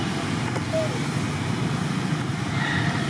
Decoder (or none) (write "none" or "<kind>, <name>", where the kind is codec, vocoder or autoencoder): none